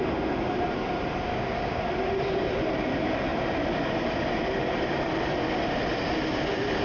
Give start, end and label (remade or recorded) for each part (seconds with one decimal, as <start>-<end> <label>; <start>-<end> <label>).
0.0-1.3 recorded; 1.3-1.8 remade; 1.8-6.8 recorded